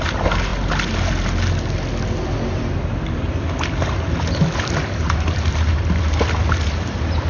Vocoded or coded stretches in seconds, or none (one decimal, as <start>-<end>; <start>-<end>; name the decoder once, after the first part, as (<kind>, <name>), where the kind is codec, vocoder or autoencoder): 0.0-0.5 (vocoder, BigVGAN v2); 3.2-7.3

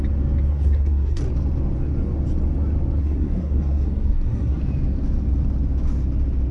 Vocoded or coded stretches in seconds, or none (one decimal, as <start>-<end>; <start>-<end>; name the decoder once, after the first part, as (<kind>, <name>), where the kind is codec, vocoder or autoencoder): 0.5-1.2 (codec, SNAC); 3.0-4.6